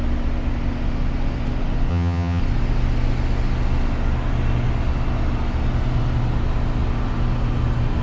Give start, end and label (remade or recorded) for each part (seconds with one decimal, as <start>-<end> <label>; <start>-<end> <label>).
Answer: 0.0-1.9 recorded; 1.9-2.4 remade; 2.4-8.0 recorded